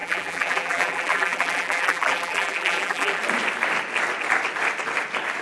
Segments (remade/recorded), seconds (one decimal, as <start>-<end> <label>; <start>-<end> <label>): 0.0-3.2 remade; 3.2-5.4 recorded

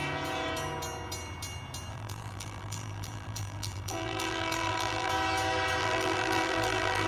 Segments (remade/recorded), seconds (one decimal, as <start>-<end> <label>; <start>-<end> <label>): 0.0-1.9 recorded; 1.9-5.1 remade; 5.1-5.8 recorded; 5.8-7.1 remade

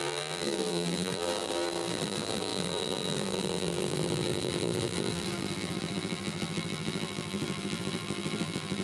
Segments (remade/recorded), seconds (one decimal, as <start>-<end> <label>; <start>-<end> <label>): 0.0-8.8 remade

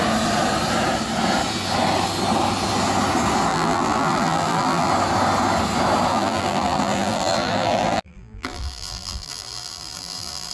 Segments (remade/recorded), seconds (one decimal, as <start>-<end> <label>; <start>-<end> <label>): 0.0-3.5 recorded; 3.5-4.9 remade; 4.9-6.1 recorded; 6.1-10.5 remade